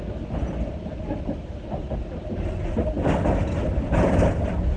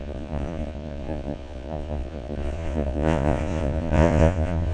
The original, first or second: first